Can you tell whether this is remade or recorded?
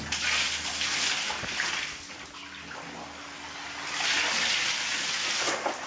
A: recorded